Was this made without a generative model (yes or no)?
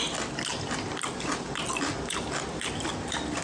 yes